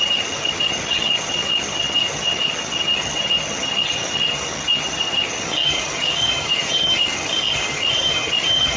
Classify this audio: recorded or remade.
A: remade